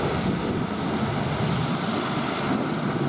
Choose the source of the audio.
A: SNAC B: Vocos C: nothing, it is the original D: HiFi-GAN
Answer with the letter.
C